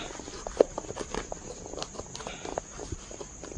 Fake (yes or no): no